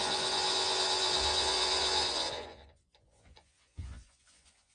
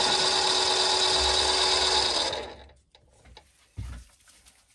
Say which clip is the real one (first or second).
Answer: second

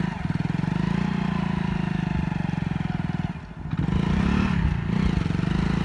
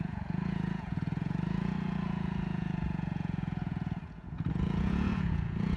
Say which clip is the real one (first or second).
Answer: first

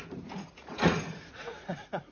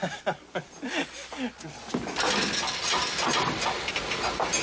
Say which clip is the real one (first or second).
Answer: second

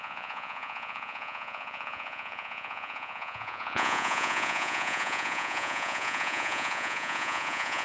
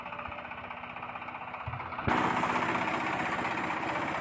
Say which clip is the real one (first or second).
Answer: second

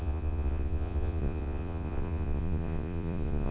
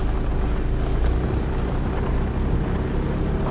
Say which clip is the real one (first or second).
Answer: second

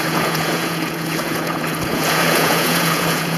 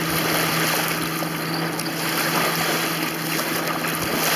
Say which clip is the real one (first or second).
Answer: second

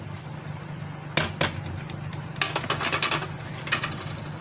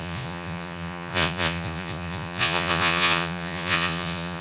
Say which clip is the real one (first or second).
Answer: first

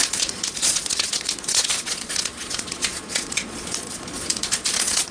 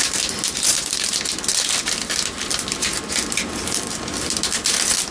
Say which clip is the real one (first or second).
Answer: second